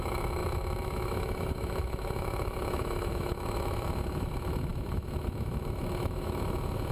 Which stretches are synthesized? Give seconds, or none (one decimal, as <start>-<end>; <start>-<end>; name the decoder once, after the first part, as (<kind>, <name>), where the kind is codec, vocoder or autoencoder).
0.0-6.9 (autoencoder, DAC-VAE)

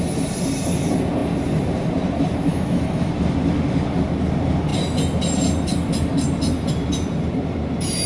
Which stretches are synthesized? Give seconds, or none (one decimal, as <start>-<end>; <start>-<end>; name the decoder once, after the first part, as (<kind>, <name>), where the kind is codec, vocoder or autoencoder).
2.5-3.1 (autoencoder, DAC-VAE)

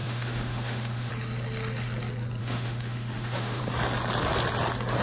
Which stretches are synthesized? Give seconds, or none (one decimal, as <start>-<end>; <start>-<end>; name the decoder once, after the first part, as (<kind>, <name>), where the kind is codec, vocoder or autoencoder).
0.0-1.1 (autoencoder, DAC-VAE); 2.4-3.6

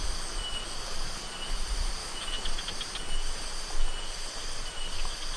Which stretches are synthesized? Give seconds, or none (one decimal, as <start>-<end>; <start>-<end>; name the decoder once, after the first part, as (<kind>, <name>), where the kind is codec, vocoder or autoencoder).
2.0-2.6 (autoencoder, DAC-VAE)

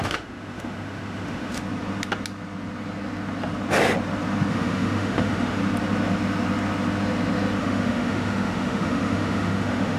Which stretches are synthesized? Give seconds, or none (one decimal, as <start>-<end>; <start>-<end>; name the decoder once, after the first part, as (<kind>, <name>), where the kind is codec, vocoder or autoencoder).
0.0-1.6 (autoencoder, DAC-VAE); 4.5-5.6; 7.6-10.0

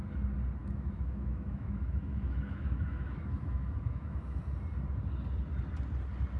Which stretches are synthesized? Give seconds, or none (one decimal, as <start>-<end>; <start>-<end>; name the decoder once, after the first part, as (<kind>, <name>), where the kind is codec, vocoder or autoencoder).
0.6-4.4 (autoencoder, DAC-VAE)

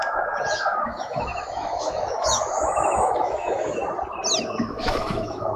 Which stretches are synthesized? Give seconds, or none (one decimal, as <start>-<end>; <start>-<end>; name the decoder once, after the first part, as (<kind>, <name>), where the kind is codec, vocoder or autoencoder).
0.0-3.8 (autoencoder, DAC-VAE); 4.4-5.6

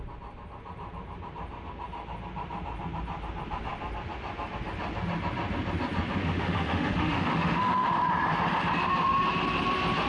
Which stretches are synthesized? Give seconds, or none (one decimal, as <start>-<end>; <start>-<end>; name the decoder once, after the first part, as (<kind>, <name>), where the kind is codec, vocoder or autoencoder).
6.2-7.9 (autoencoder, DAC-VAE)